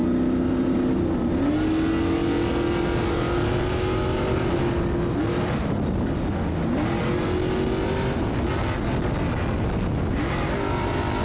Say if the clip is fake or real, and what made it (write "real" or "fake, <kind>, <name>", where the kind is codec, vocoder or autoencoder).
real